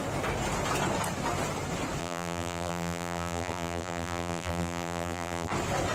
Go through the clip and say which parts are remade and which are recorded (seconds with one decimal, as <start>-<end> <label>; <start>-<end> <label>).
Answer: 0.0-2.0 recorded; 2.0-5.5 remade; 5.5-5.9 recorded